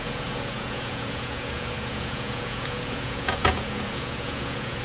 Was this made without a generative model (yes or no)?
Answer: no